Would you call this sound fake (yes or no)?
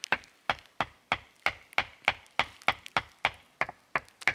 no